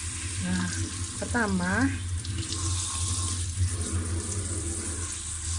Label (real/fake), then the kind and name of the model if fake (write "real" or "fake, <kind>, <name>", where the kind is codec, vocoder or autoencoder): real